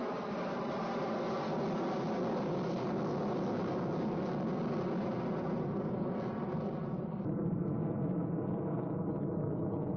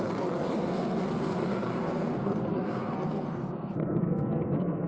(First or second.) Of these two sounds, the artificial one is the second